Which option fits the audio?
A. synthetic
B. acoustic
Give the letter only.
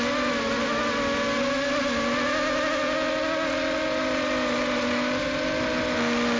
B